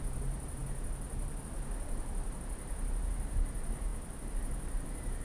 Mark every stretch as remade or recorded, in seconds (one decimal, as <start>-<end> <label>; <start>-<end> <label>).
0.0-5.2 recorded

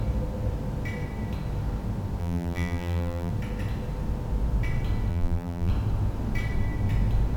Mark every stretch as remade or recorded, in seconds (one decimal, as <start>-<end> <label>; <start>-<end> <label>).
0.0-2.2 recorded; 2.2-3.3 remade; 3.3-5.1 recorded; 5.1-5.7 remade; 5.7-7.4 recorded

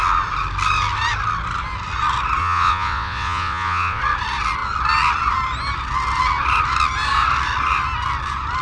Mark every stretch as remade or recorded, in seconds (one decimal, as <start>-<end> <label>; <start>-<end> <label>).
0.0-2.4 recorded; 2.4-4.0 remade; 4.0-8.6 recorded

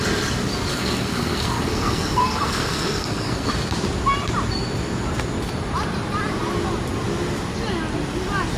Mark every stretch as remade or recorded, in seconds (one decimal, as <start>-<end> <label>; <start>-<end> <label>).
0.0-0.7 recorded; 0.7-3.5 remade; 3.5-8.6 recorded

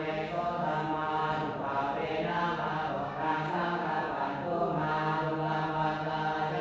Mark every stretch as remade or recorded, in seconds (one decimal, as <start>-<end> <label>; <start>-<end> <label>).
0.0-1.2 remade; 1.2-2.9 recorded; 2.9-5.3 remade; 5.3-6.6 recorded